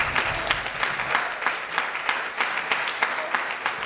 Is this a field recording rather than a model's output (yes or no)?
yes